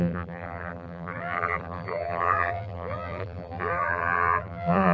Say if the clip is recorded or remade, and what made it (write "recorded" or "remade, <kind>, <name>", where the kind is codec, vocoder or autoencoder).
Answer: remade, vocoder, BigVGAN v2